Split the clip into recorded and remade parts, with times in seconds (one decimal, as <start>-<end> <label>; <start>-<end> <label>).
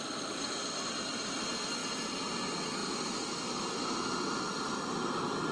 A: 0.0-1.8 remade; 1.8-2.4 recorded; 2.4-2.8 remade; 2.8-4.1 recorded; 4.1-5.5 remade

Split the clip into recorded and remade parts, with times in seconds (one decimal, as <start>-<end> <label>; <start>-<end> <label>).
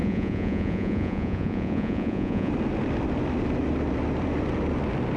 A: 0.0-2.5 remade; 2.5-5.2 recorded